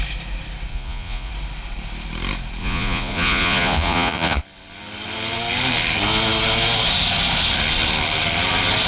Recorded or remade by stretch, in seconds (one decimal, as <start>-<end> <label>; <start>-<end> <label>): 0.0-0.7 recorded; 0.7-1.3 remade; 1.3-2.6 recorded; 2.6-4.4 remade; 4.4-8.9 recorded